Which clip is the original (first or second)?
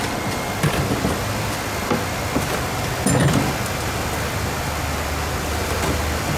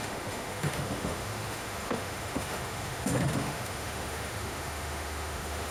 first